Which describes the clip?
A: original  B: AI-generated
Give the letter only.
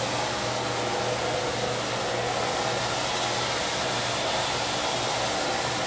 A